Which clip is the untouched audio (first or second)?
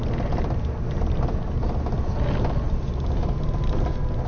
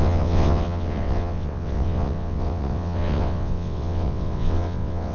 first